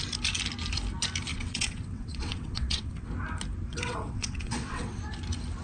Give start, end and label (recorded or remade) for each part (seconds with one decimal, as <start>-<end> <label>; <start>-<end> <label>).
0.0-1.3 recorded; 1.3-3.1 remade; 3.1-3.7 recorded; 3.7-5.0 remade; 5.0-5.6 recorded